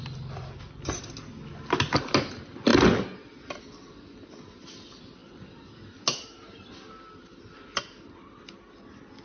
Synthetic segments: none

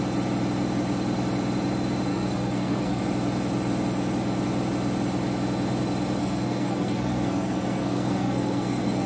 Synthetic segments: 2.1-3.0 (codec, SNAC); 6.2-9.1

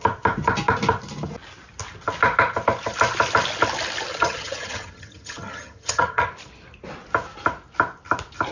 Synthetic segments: 4.1-6.3 (vocoder, HiFi-GAN)

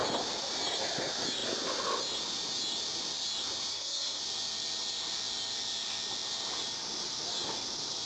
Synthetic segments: 3.7-4.2 (codec, SNAC)

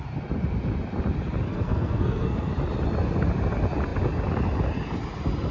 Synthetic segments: 1.5-2.5 (codec, SNAC)

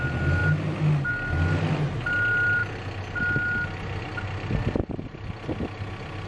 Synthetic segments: none

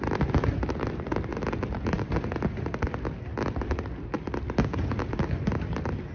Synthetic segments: none

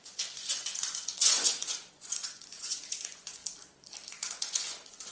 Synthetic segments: 0.0-3.4 (vocoder, Vocos); 4.1-5.1